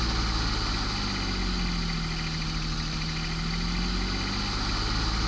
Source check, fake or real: real